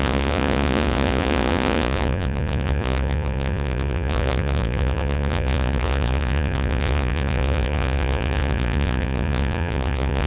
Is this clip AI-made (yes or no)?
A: yes